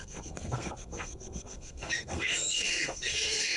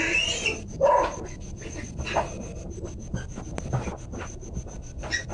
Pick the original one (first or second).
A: second